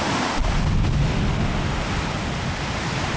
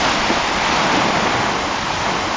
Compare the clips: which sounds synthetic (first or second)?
second